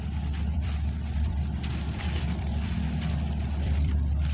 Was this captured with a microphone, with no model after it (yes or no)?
no